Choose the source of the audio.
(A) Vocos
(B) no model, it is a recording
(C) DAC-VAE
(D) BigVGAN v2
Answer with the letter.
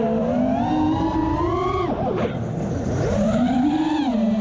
D